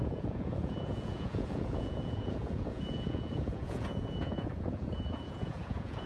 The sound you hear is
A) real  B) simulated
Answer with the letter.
B